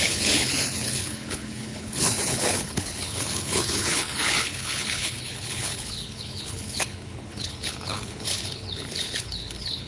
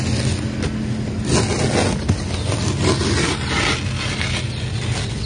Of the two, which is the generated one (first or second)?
first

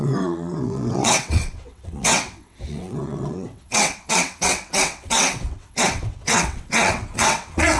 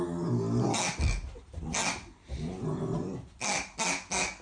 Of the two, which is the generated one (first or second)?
first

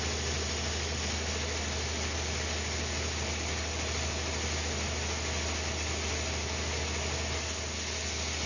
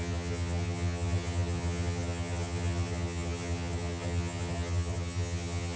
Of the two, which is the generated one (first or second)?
second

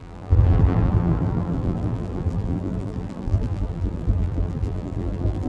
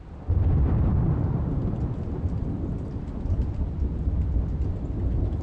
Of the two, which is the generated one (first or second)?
first